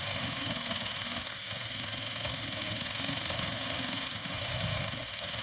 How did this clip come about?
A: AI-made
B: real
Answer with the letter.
A